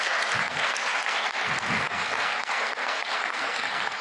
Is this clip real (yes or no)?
no